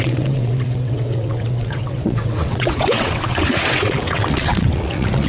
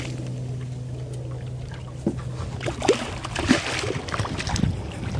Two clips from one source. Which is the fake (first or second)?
first